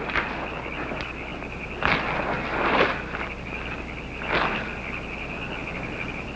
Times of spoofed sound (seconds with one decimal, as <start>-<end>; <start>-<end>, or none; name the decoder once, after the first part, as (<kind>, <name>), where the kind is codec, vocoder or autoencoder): none